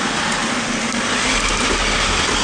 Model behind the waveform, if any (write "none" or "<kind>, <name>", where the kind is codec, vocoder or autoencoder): none